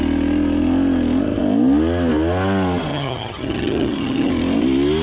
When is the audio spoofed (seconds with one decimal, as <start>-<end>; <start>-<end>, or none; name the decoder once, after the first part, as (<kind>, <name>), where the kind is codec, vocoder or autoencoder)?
2.9-4.3 (vocoder, HiFi-GAN)